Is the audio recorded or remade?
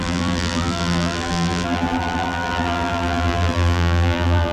remade